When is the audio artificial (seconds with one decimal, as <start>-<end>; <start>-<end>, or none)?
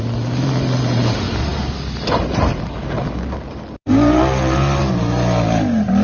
none